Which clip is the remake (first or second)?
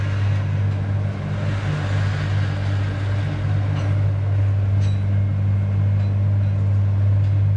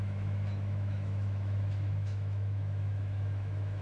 second